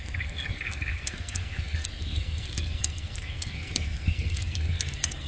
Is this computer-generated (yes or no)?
yes